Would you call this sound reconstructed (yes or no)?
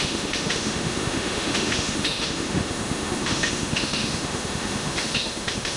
yes